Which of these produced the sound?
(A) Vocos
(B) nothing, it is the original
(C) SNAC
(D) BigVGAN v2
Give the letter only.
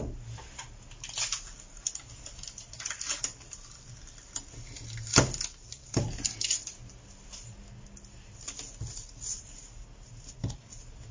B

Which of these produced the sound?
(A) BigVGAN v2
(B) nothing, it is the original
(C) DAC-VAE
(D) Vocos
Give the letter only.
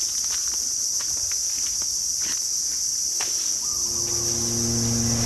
B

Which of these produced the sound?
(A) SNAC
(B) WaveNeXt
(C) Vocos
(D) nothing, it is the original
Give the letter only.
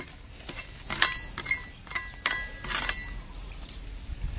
D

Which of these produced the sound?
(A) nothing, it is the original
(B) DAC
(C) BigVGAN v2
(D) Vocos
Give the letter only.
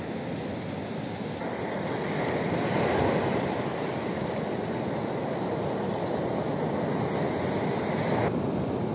A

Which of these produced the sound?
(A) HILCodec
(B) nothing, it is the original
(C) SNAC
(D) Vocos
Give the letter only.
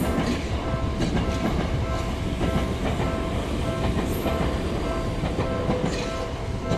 B